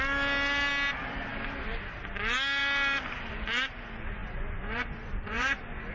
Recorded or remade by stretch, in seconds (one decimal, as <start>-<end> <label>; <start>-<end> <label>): 0.0-4.2 recorded; 4.2-5.9 remade